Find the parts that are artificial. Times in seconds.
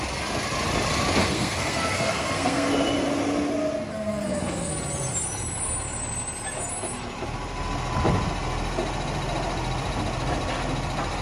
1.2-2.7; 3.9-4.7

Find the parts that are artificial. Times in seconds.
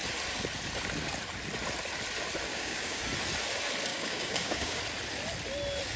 2.5-3.0; 3.9-4.8